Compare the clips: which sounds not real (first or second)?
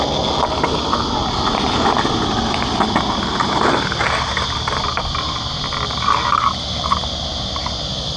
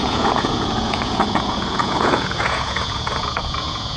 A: second